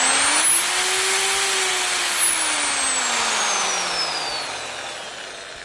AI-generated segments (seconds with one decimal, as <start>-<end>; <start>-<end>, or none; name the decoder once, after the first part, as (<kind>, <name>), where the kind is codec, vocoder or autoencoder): none